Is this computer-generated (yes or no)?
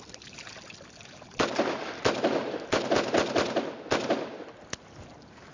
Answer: no